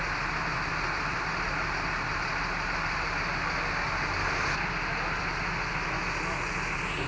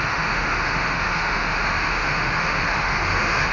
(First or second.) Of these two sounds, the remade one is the second